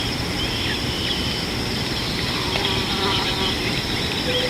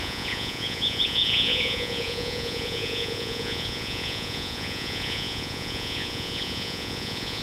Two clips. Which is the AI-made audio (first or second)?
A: second